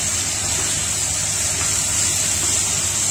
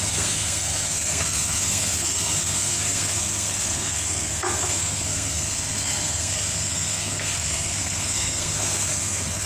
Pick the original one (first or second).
first